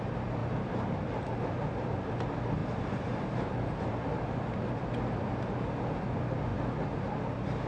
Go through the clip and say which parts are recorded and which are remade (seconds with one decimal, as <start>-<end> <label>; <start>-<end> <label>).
0.0-0.4 recorded; 0.4-1.4 remade; 1.4-2.6 recorded; 2.6-4.3 remade; 4.3-7.7 recorded